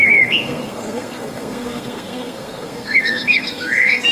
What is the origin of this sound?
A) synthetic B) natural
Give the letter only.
A